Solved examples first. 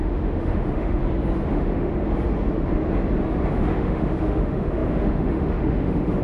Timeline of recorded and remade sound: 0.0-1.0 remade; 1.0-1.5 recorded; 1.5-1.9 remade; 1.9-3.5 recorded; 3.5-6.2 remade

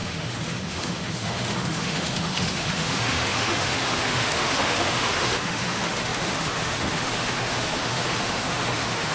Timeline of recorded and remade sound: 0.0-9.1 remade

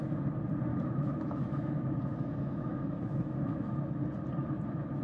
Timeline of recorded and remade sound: 0.0-0.7 recorded; 0.7-3.7 remade; 3.7-5.0 recorded

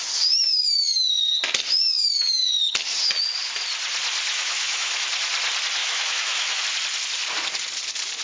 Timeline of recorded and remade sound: 0.0-4.3 recorded; 4.3-5.1 remade; 5.1-5.8 recorded; 5.8-6.6 remade; 6.6-8.2 recorded